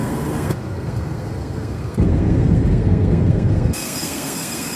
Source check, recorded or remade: remade